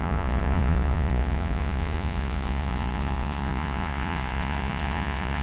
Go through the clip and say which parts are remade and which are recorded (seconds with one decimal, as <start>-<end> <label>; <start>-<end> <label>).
0.0-5.4 remade